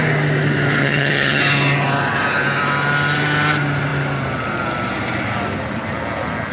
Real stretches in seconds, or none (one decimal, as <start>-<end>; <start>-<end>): 0.0-0.8; 1.4-6.5